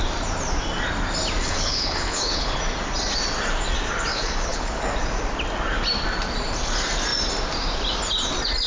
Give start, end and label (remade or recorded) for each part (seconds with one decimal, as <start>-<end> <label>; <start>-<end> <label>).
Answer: 0.0-1.4 recorded; 1.4-2.6 remade; 2.6-4.1 recorded; 4.1-4.8 remade; 4.8-8.7 recorded